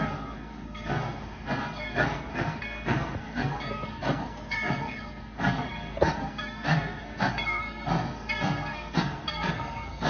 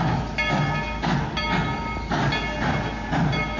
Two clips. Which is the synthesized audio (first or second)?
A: first